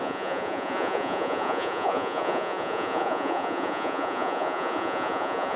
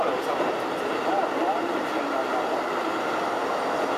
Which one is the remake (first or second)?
first